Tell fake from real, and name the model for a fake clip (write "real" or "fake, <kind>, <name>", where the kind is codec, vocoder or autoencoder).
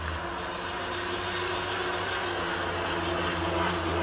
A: real